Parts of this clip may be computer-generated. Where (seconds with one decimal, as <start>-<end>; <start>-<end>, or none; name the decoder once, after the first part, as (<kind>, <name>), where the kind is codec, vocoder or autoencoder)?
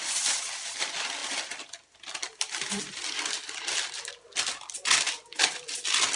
none